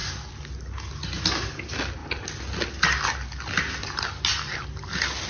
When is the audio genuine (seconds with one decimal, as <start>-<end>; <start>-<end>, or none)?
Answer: 0.0-5.3